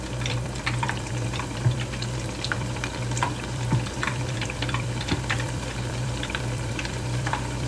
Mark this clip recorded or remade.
remade